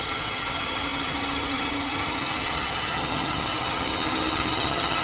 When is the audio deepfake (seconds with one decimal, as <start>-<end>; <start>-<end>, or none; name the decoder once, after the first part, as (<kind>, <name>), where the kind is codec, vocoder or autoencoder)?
0.0-5.0 (vocoder, HiFi-GAN)